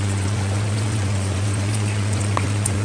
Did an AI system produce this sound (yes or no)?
yes